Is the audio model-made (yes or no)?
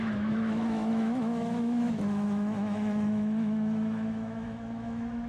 yes